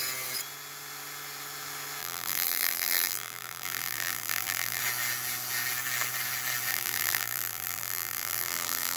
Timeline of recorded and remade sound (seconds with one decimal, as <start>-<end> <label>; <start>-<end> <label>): 0.0-2.0 recorded; 2.0-4.8 remade; 4.8-6.7 recorded; 6.7-9.0 remade